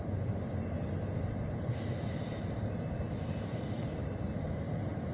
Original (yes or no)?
yes